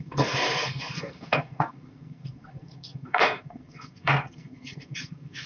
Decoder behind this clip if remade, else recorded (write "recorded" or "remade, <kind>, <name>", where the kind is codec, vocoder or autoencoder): remade, codec, SNAC